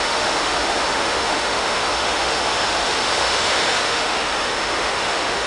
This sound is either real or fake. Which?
fake